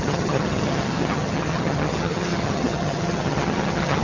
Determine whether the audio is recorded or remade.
remade